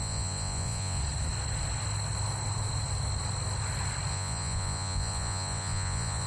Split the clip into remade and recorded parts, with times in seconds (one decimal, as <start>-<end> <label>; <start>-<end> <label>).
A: 0.0-1.0 remade; 1.0-4.1 recorded; 4.1-6.3 remade